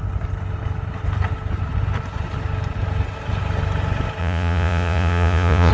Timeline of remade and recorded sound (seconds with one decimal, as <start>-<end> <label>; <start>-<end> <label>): 0.0-4.2 recorded; 4.2-5.7 remade